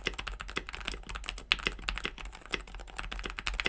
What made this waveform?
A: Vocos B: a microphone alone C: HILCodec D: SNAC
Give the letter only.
B